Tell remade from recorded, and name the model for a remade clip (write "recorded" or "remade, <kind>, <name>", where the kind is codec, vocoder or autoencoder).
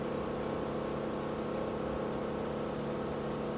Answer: recorded